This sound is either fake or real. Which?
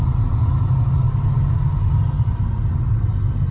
real